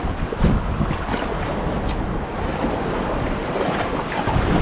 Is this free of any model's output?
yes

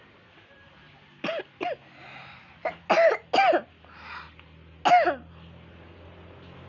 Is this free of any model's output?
yes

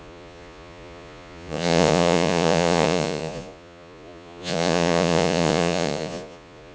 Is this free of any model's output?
no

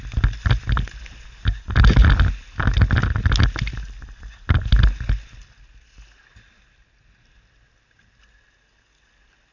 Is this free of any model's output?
yes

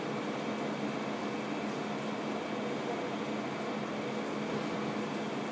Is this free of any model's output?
yes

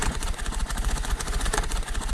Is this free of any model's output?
no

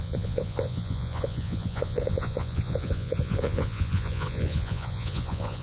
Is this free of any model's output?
no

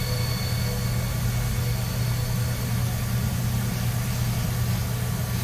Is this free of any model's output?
yes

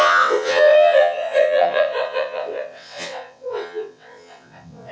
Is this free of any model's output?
no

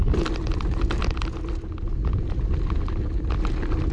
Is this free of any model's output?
yes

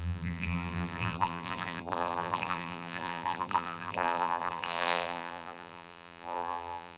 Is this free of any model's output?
no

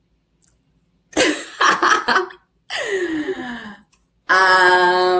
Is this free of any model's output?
yes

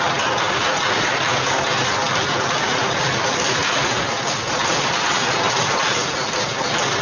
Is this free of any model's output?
yes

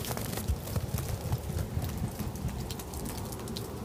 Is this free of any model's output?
yes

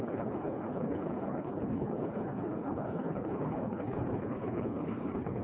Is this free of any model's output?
no